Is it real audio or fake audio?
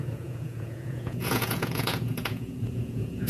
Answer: fake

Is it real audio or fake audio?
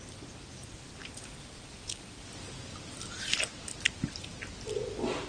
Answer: real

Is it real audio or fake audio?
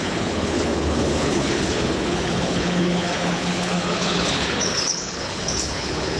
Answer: fake